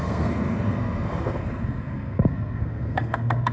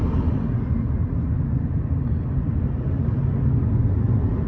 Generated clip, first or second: first